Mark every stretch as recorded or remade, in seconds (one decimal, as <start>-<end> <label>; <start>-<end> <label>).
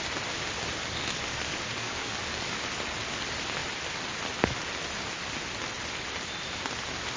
0.0-0.8 recorded; 0.8-2.6 remade; 2.6-7.2 recorded